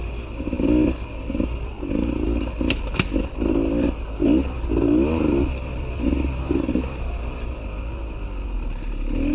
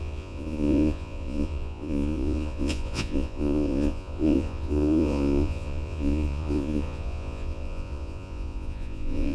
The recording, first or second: first